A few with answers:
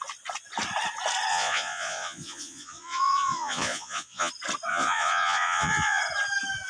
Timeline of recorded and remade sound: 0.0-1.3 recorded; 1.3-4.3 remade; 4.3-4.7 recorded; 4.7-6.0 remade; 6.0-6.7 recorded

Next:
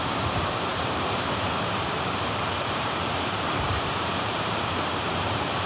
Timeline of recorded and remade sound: 0.0-5.7 remade

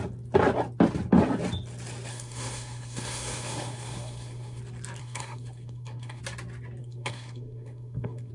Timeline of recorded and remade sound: 0.0-2.1 recorded; 2.1-4.6 remade; 4.6-5.0 recorded; 5.0-6.2 remade; 6.2-6.8 recorded; 6.8-8.3 remade

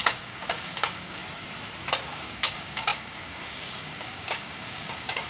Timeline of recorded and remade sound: 0.0-1.2 remade; 1.2-2.1 recorded; 2.1-5.3 remade

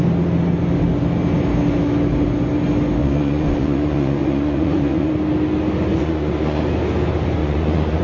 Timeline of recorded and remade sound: 0.0-3.0 recorded; 3.0-5.1 remade; 5.1-5.9 recorded; 5.9-6.6 remade; 6.6-7.4 recorded; 7.4-8.0 remade

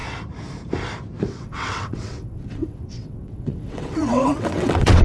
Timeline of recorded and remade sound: 0.0-1.3 recorded; 1.3-5.0 remade

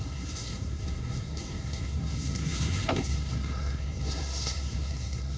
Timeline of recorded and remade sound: 0.0-5.4 remade